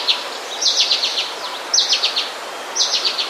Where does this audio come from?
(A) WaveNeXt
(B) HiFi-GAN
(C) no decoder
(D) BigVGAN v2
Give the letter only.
C